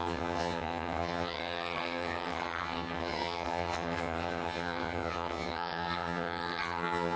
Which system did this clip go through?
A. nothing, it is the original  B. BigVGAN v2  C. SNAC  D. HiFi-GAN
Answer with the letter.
D